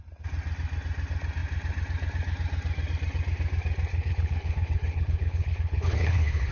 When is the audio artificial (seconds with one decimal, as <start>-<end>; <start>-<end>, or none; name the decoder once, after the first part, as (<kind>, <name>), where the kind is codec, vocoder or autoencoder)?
3.9-6.5 (codec, HILCodec)